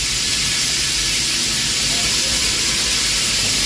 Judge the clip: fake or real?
real